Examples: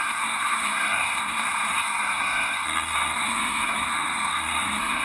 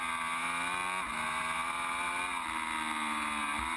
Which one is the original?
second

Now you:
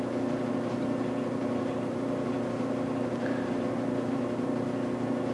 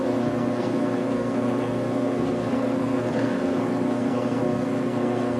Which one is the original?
first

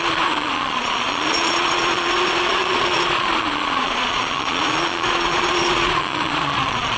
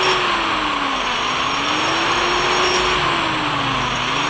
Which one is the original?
second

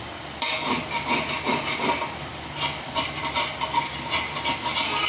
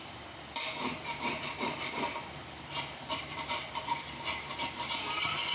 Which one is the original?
first